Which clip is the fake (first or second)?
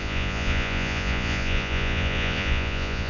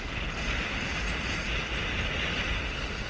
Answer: first